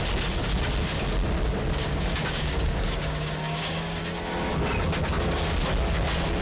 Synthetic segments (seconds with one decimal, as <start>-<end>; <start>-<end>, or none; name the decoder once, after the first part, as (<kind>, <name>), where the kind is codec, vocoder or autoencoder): 1.8-4.0 (codec, DAC)